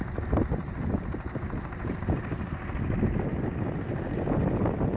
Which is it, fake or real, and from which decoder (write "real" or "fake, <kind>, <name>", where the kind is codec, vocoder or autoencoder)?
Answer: real